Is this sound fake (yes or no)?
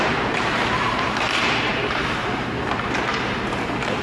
yes